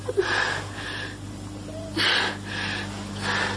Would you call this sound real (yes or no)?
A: yes